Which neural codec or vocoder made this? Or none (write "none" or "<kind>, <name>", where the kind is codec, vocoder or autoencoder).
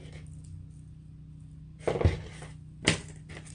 none